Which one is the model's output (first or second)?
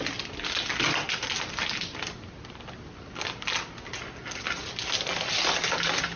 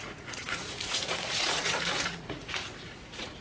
second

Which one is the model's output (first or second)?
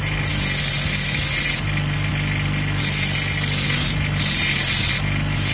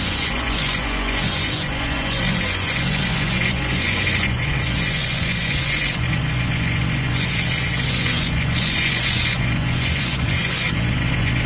second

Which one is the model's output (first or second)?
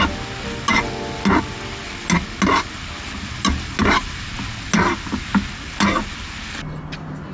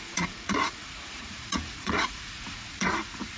second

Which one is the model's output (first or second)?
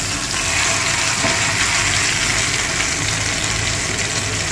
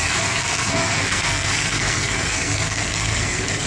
second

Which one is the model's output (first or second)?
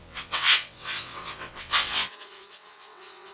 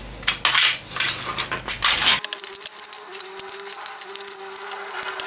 first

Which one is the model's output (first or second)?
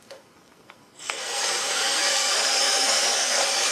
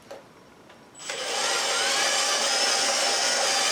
first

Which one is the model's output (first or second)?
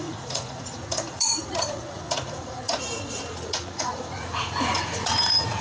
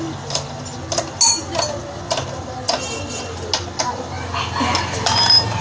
first